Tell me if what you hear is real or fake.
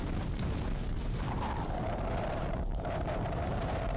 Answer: fake